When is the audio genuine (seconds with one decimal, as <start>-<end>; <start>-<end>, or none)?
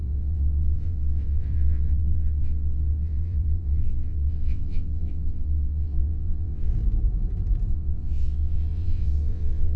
6.7-7.7